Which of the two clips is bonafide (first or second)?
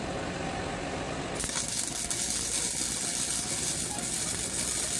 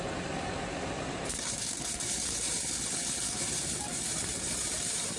first